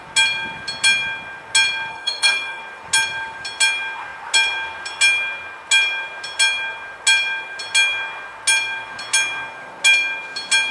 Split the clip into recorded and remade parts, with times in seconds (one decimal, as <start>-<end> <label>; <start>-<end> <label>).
0.0-1.9 recorded; 1.9-2.6 remade; 2.6-10.7 recorded